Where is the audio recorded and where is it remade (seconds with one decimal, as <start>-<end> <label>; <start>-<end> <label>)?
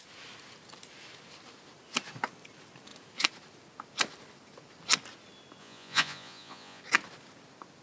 0.0-5.6 recorded; 5.6-6.8 remade; 6.8-7.8 recorded